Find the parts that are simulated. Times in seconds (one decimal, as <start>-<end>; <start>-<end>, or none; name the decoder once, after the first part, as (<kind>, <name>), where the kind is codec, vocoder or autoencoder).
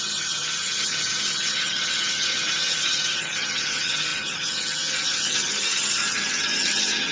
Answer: 0.0-7.1 (vocoder, HiFi-GAN)